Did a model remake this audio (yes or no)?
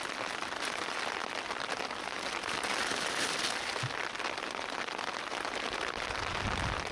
no